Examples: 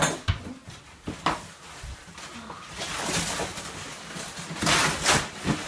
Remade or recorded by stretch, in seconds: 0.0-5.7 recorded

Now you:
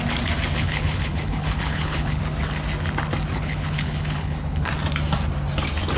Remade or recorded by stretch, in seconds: 0.0-0.5 recorded; 0.5-2.2 remade; 2.2-3.3 recorded; 3.3-4.7 remade; 4.7-6.0 recorded

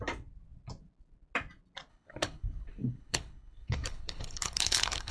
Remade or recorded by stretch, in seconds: 0.0-1.9 recorded; 1.9-5.1 remade

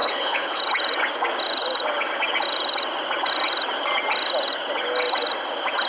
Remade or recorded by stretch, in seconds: 0.0-0.6 remade; 0.6-5.9 recorded

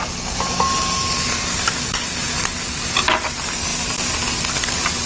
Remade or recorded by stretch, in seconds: 0.0-5.1 recorded

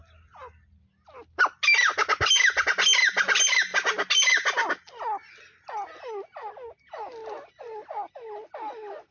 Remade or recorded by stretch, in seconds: 0.0-9.1 recorded

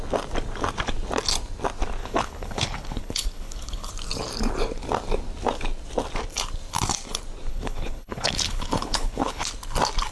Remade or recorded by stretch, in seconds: 0.0-2.0 recorded; 2.0-3.9 remade; 3.9-7.5 recorded; 7.5-9.5 remade; 9.5-10.1 recorded

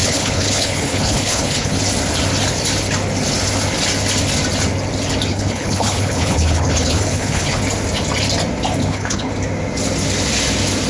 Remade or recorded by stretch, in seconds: 0.0-1.8 remade; 1.8-5.3 recorded; 5.3-7.6 remade; 7.6-8.8 recorded; 8.8-9.3 remade; 9.3-10.9 recorded